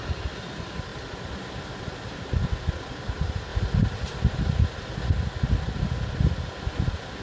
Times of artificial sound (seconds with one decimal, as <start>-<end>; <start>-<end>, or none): none